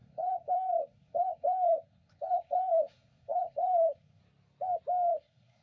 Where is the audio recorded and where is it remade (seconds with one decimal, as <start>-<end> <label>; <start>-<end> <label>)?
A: 0.0-4.2 remade; 4.2-5.1 recorded; 5.1-5.6 remade